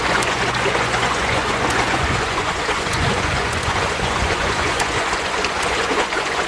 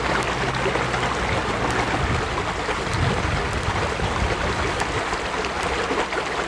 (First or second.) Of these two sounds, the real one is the second